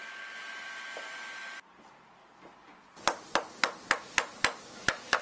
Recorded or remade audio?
recorded